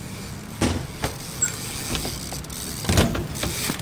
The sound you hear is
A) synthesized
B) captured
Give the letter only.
B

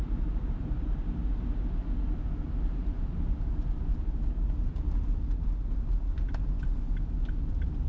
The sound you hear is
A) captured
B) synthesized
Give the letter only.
A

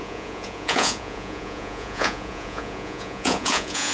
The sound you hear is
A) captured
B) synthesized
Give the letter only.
B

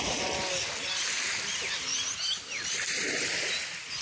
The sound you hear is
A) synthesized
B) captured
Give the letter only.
B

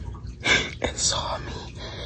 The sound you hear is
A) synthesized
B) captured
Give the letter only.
B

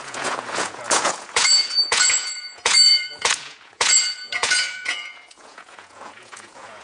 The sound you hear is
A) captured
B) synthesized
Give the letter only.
B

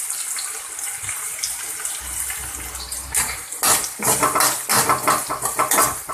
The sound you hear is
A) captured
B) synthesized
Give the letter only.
A